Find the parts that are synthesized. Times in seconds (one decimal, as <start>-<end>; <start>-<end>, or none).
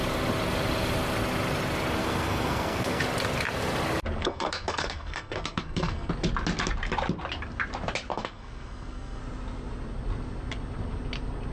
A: 2.0-3.0; 4.2-6.1; 8.1-9.2